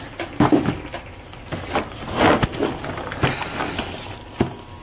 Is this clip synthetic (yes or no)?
no